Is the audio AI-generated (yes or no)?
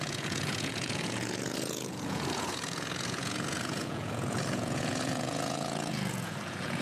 yes